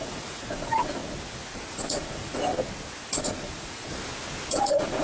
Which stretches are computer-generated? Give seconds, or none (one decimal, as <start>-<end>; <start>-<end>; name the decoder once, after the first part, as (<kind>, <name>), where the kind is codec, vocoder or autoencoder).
0.0-1.0 (vocoder, Vocos); 1.7-2.4; 3.1-3.9; 4.5-5.0